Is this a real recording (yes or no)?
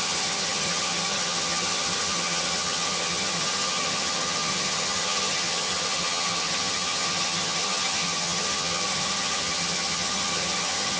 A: no